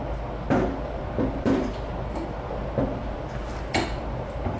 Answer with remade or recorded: recorded